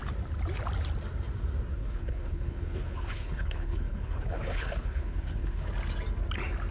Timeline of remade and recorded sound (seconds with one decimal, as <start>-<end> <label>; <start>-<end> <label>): 0.0-1.7 recorded; 1.7-5.7 remade; 5.7-6.7 recorded